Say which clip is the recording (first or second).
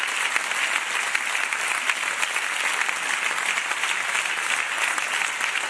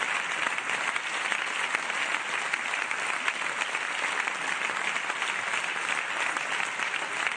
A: first